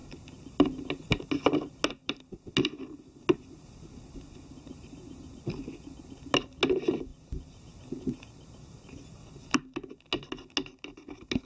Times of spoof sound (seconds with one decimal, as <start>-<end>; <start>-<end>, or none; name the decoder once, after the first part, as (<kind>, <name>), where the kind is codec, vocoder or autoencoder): none